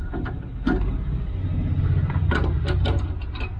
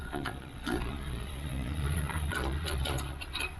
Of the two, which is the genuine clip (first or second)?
first